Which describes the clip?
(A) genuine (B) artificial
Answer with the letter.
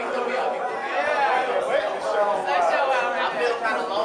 A